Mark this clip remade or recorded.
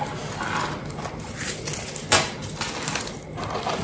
recorded